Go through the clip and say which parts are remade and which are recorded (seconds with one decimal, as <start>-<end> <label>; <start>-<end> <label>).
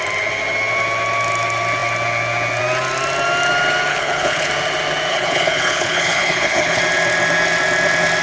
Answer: 0.0-3.9 recorded; 3.9-4.5 remade; 4.5-5.1 recorded; 5.1-6.8 remade; 6.8-8.2 recorded